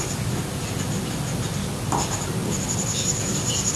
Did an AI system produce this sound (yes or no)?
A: no